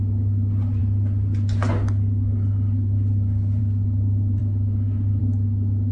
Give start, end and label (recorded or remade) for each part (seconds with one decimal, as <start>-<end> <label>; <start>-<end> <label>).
0.0-5.9 recorded